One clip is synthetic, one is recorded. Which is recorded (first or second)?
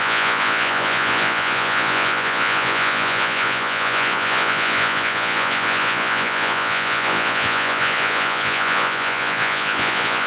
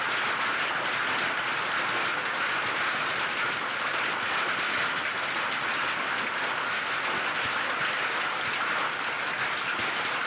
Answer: second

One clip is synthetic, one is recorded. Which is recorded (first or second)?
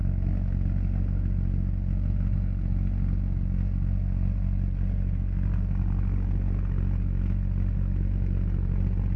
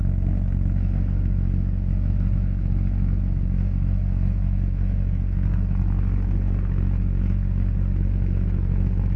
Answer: first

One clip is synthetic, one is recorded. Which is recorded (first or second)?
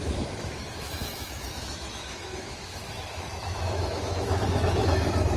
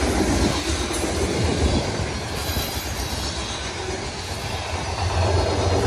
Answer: second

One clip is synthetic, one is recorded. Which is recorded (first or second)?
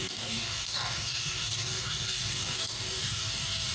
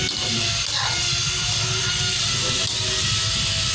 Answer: second